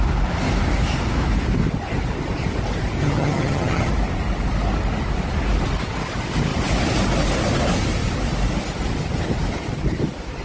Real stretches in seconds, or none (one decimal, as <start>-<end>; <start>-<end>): 0.0-3.0; 3.9-10.4